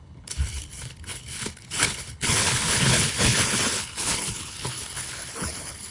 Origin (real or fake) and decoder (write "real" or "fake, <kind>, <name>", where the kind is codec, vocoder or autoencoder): fake, codec, HILCodec